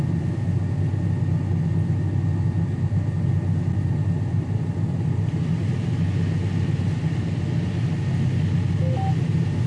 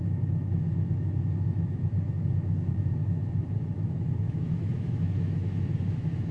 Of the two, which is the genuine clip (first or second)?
first